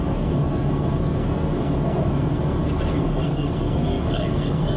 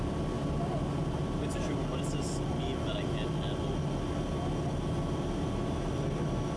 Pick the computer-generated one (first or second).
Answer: first